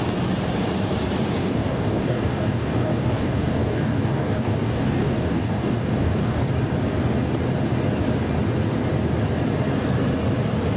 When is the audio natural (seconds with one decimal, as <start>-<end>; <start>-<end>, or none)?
0.0-1.4; 6.4-10.8